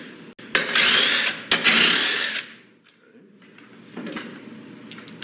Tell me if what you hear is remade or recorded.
recorded